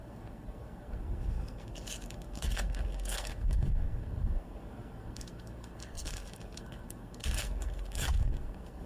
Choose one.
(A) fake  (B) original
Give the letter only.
A